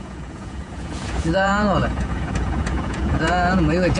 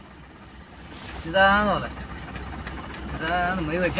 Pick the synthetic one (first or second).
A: first